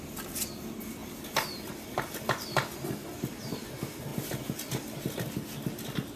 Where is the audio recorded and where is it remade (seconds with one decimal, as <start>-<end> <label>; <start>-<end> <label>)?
0.0-6.2 recorded